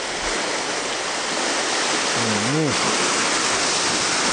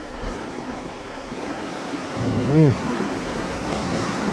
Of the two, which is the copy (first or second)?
second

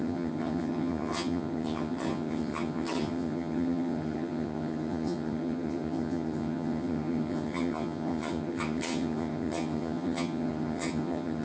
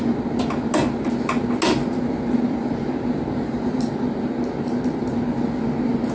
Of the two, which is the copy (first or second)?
first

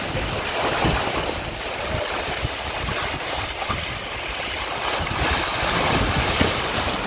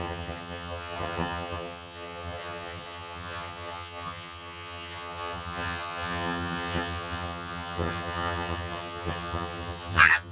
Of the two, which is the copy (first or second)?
second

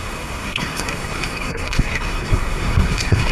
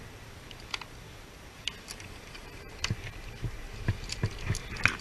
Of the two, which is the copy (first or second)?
first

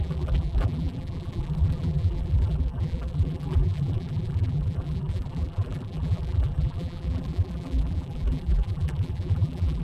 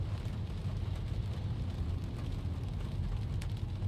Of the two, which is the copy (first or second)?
first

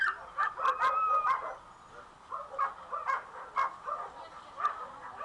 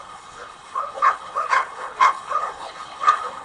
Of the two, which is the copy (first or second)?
second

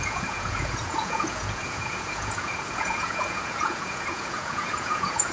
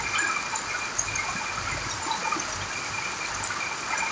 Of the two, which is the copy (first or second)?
first